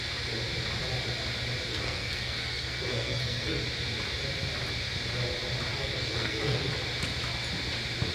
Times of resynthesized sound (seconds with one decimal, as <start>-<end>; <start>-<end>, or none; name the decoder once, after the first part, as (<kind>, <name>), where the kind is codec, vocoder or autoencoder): 1.7-3.6 (codec, SNAC); 5.7-6.7